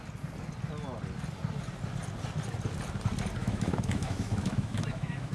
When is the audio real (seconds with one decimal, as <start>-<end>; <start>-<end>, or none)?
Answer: 0.0-3.4